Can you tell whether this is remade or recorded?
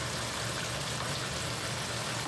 recorded